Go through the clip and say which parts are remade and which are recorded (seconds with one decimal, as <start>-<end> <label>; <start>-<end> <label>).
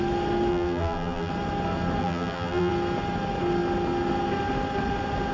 0.0-0.5 recorded; 0.5-1.3 remade; 1.3-2.0 recorded; 2.0-2.7 remade; 2.7-5.3 recorded